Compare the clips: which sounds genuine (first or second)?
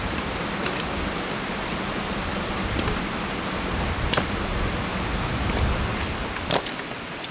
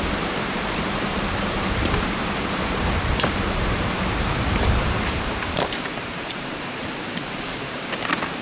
first